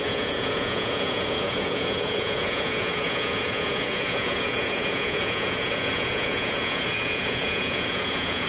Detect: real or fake fake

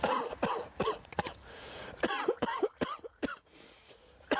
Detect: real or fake fake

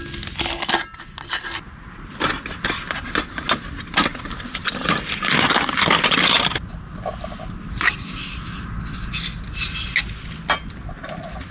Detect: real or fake real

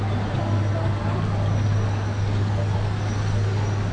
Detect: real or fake real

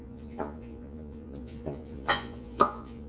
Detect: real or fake fake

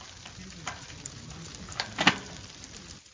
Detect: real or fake real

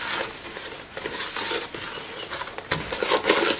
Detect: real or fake real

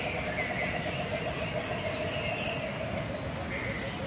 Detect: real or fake real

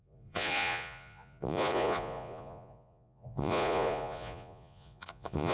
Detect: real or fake fake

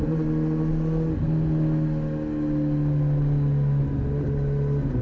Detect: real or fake real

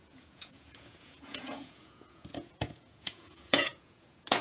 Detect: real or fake fake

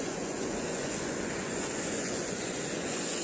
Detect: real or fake fake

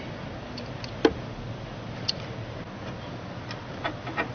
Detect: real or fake real